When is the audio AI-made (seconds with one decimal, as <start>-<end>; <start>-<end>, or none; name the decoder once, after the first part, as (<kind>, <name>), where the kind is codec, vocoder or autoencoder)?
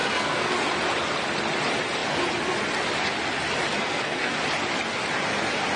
0.0-0.5 (codec, SNAC); 3.8-4.3